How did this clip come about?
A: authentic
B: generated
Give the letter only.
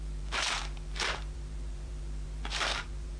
B